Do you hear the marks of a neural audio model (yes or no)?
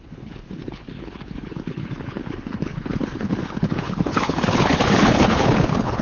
yes